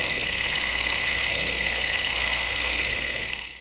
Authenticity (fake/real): fake